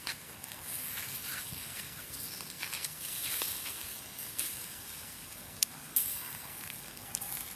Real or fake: fake